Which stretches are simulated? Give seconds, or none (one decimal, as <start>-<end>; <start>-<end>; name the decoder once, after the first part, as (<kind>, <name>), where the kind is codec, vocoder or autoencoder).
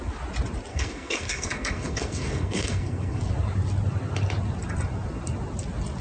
0.7-3.2 (codec, SNAC)